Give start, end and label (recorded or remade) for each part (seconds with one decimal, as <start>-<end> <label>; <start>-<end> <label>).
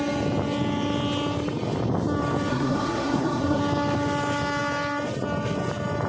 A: 0.0-2.5 recorded; 2.5-3.6 remade; 3.6-6.1 recorded